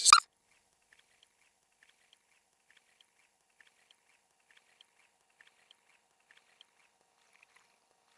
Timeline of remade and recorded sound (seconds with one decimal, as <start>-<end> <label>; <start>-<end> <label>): 0.0-8.2 recorded